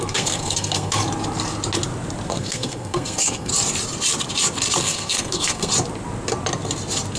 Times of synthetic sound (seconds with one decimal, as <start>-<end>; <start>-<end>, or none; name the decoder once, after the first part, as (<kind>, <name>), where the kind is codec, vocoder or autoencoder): 0.0-1.0 (codec, SNAC); 2.3-3.5; 4.8-5.7